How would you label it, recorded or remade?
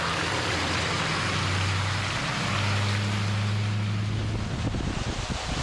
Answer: recorded